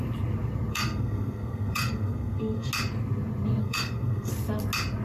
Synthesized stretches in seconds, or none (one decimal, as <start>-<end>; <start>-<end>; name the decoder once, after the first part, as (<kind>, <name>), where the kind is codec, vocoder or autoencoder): 0.7-2.7 (codec, SNAC); 3.6-4.3